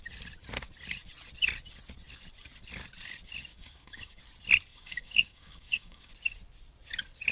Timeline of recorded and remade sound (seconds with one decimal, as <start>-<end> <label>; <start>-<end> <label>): 0.0-3.5 recorded; 3.5-4.2 remade; 4.2-4.7 recorded; 4.7-6.1 remade; 6.1-7.3 recorded